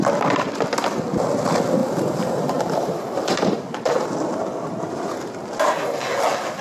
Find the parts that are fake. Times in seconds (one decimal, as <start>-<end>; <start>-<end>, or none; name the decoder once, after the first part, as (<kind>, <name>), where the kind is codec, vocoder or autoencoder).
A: 1.8-5.8 (vocoder, BigVGAN v2)